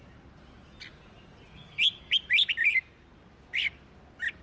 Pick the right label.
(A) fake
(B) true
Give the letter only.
B